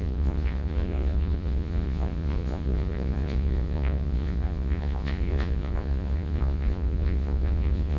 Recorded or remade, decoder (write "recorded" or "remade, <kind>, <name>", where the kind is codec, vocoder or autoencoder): remade, vocoder, Vocos